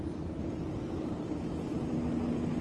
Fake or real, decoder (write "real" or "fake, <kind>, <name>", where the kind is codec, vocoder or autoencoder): real